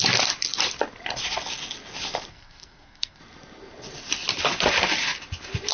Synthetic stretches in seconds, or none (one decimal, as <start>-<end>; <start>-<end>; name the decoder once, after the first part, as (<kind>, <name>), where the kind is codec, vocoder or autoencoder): 2.3-3.2 (codec, SNAC)

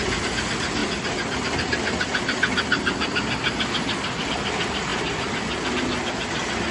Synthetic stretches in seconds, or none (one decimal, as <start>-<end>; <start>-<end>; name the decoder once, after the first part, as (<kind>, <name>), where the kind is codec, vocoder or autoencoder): none

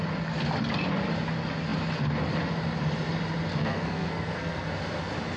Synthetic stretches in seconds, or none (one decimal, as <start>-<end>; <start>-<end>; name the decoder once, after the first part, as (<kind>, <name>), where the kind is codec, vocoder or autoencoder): 3.5-4.7 (codec, SNAC)

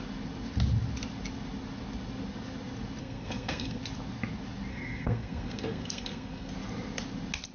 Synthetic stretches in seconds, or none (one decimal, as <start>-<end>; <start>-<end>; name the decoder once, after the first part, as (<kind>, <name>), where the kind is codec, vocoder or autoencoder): 3.0-3.8 (codec, SNAC); 4.7-6.5

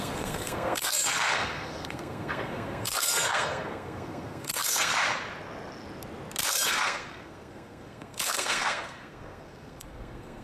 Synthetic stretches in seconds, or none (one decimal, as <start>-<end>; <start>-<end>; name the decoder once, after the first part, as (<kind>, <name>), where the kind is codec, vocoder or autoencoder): 0.0-4.9 (codec, SNAC); 6.5-10.4

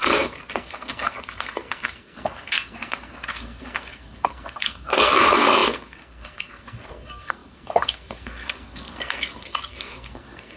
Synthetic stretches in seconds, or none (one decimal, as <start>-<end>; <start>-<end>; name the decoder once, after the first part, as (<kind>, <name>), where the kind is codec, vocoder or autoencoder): 0.0-10.6 (codec, SNAC)